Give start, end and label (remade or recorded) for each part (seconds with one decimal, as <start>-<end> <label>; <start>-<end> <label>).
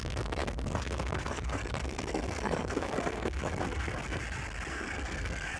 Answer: 0.0-4.2 remade; 4.2-4.7 recorded; 4.7-5.6 remade